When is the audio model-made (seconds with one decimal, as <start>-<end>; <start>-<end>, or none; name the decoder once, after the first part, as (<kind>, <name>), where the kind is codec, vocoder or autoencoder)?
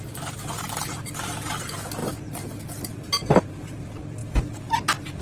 none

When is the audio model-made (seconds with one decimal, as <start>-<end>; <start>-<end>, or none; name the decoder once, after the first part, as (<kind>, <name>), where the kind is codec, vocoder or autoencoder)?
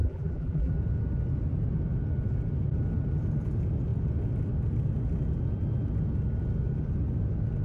0.0-0.7 (vocoder, BigVGAN v2)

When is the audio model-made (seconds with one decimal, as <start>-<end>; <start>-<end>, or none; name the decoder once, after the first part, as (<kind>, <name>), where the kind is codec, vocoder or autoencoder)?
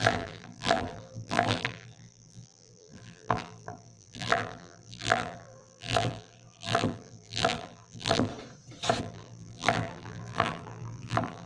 0.0-8.3 (vocoder, BigVGAN v2); 9.0-11.5